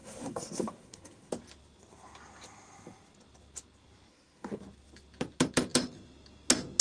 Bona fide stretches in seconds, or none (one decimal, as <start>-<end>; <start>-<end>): 1.3-4.1; 4.6-6.8